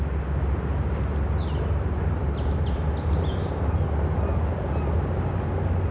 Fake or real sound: real